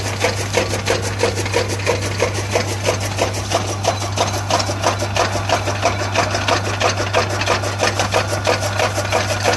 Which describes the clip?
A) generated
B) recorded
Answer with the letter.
B